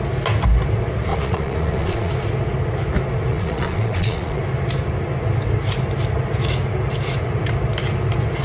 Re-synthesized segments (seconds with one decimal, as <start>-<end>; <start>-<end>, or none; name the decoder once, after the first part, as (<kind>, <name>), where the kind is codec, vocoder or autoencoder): 1.1-2.1 (vocoder, Vocos); 3.3-4.4